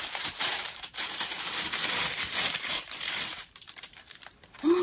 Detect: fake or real fake